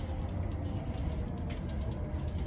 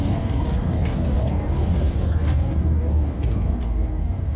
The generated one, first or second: second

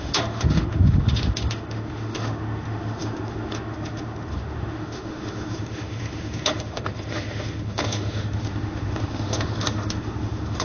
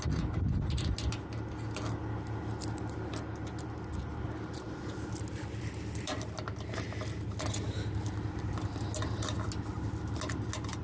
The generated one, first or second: first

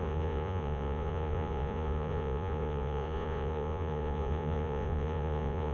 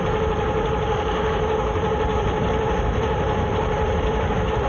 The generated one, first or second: first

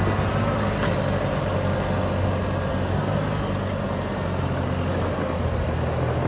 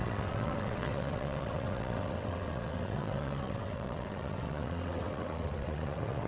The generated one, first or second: second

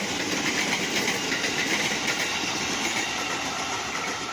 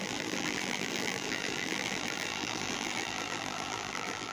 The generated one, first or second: second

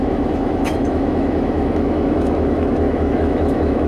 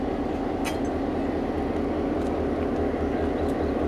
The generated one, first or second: first